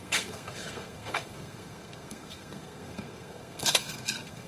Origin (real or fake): fake